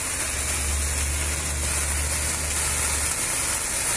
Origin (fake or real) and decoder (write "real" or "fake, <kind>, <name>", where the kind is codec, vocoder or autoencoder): real